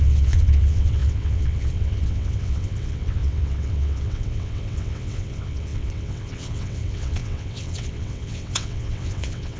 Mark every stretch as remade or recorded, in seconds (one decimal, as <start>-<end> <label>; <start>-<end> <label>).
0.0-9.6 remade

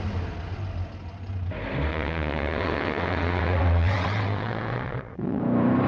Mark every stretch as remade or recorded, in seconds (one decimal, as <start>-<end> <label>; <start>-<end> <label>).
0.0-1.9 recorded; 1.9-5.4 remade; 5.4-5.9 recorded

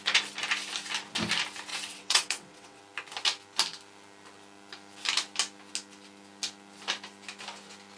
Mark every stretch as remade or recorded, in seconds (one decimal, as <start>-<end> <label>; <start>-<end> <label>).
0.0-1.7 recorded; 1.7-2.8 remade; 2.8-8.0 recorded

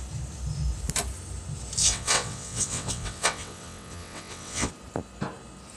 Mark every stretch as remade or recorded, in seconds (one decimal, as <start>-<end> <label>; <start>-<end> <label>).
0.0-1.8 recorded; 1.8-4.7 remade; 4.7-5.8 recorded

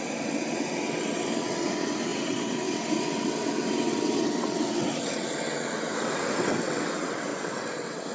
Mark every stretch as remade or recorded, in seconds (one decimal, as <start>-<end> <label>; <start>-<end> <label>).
0.0-8.1 remade